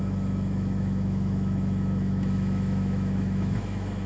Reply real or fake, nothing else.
fake